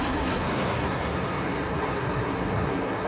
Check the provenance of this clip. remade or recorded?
remade